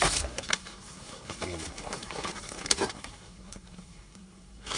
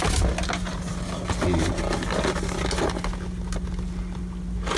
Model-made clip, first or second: first